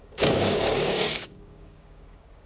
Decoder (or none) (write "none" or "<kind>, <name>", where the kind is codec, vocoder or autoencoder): codec, DAC